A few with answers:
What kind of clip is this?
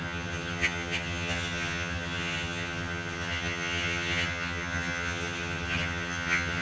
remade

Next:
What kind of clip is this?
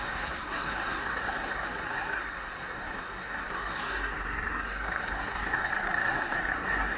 remade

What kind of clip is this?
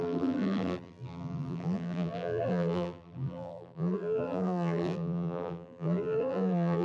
remade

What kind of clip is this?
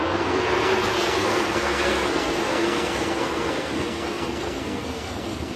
remade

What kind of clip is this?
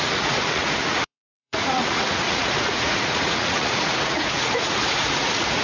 remade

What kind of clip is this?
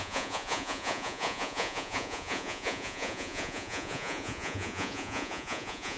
remade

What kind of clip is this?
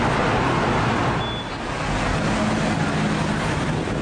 recorded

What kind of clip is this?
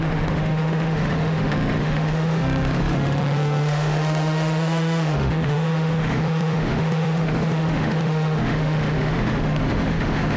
remade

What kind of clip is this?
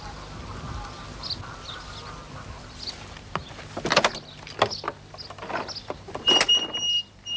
recorded